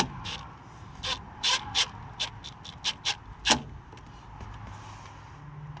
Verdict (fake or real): real